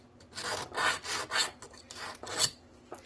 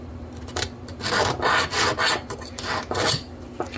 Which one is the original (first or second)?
first